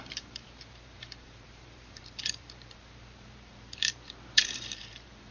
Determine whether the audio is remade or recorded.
remade